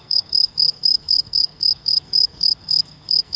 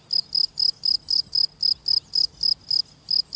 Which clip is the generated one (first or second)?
first